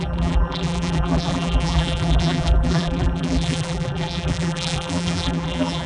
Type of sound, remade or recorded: remade